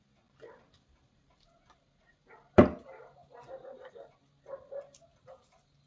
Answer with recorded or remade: recorded